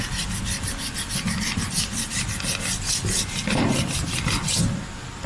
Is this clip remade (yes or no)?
no